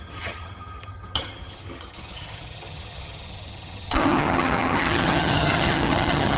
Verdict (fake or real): fake